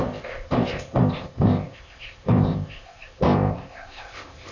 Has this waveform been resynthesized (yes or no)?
yes